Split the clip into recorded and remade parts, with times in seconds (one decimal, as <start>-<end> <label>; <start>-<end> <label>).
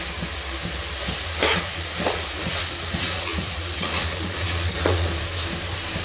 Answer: 0.0-1.5 recorded; 1.5-5.1 remade; 5.1-6.0 recorded